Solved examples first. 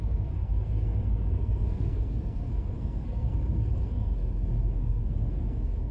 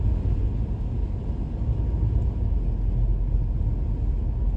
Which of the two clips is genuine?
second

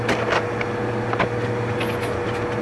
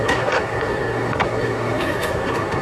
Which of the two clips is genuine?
first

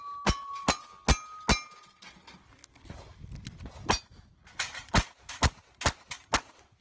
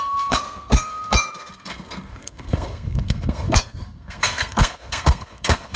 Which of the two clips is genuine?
first